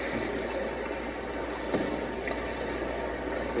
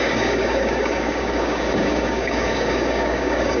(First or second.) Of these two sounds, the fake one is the second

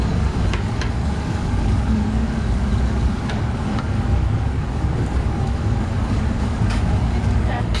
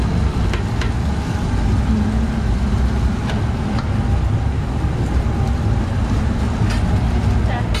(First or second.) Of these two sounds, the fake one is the first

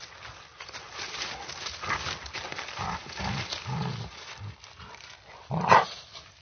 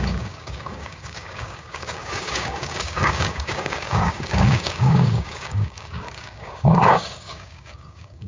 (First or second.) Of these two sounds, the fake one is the second